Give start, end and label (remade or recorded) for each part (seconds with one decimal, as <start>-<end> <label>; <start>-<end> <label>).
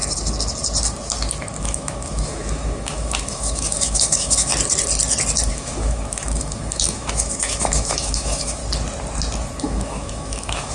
0.0-1.6 recorded; 1.6-4.5 remade; 4.5-5.5 recorded; 5.5-8.6 remade; 8.6-9.6 recorded; 9.6-10.7 remade